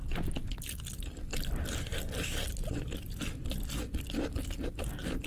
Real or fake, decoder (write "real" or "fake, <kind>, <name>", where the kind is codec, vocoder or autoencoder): real